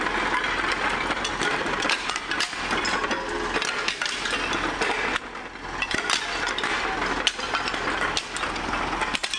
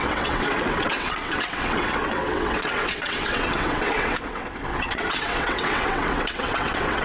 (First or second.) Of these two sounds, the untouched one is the first